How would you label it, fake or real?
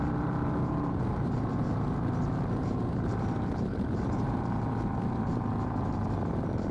fake